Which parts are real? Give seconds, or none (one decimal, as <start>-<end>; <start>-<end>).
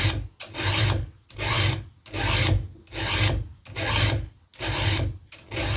0.0-5.8